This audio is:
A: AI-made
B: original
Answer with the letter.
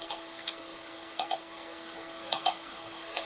A